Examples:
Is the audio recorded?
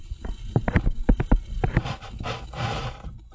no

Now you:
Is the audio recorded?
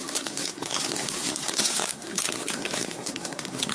no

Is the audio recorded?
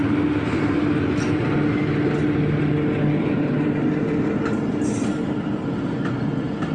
yes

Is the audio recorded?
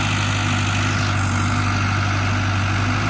yes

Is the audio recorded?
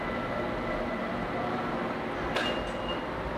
yes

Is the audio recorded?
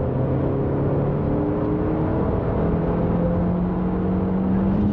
yes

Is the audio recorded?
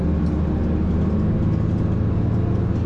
yes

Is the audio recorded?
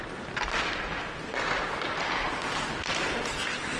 yes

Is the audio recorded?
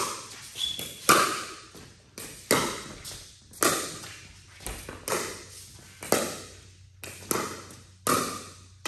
yes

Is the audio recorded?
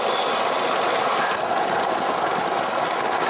yes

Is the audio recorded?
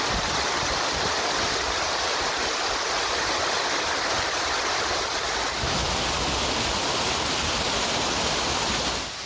yes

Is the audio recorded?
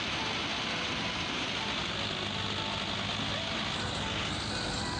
yes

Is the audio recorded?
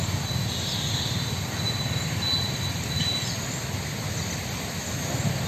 yes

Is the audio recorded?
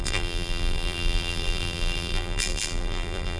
no